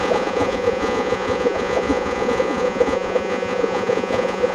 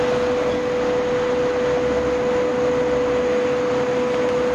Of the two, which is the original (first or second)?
second